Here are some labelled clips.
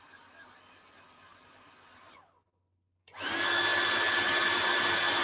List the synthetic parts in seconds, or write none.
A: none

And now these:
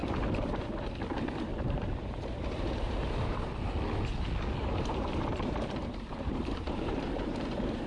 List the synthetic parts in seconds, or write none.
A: 0.0-3.5 (vocoder, BigVGAN v2); 4.6-7.9

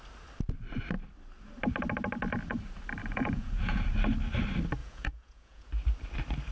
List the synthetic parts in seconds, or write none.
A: 3.0-3.9 (vocoder, Vocos); 4.8-5.7

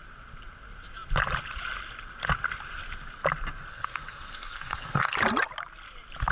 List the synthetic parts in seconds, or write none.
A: 3.7-5.1 (codec, SNAC)

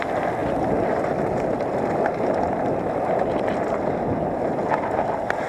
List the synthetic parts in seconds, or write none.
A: none

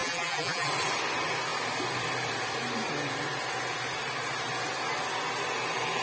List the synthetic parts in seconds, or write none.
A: 0.0-0.7 (vocoder, BigVGAN v2)

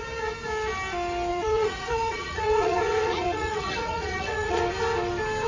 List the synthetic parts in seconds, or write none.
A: 1.3-4.6 (vocoder, Vocos)